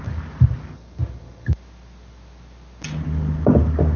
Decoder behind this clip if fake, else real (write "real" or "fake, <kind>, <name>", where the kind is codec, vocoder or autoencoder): real